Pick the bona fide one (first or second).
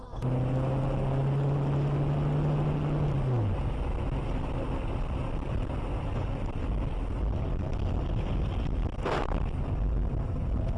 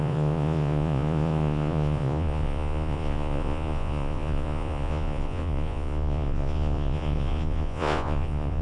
first